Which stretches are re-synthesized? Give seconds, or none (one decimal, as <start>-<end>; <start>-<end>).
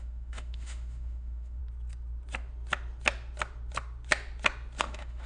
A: 0.0-1.6; 4.8-5.3